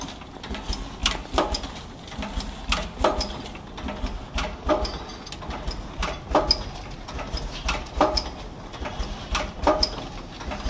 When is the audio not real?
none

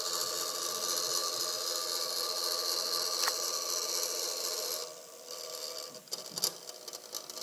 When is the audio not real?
none

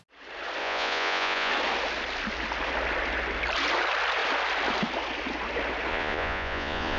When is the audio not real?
0.6-1.5 (vocoder, Vocos); 5.9-7.0